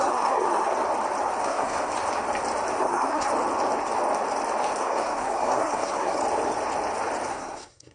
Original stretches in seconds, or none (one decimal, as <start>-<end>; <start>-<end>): 0.7-1.4; 1.9-2.8; 3.3-4.8; 6.2-7.3